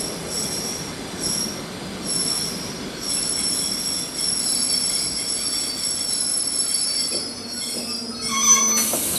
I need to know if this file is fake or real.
real